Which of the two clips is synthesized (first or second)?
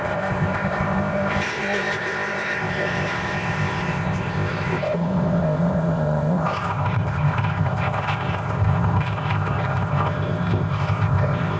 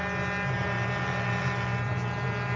first